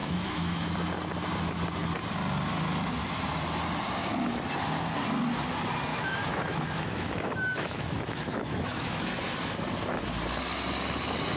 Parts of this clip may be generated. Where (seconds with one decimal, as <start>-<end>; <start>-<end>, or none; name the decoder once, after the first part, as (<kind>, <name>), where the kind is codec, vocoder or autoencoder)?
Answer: 0.0-0.7 (autoencoder, DAC-VAE); 5.9-9.1